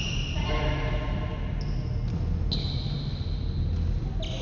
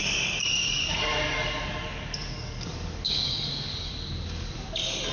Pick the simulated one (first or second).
second